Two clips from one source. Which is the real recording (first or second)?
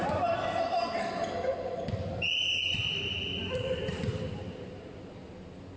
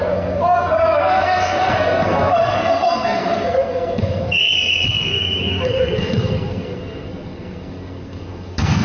first